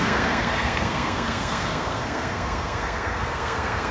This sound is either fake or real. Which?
fake